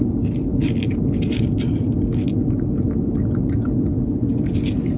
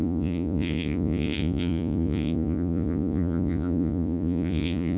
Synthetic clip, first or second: second